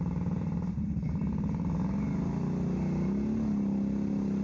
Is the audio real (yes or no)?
yes